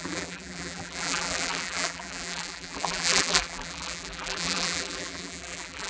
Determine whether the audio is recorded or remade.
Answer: remade